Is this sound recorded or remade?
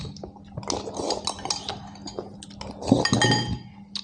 recorded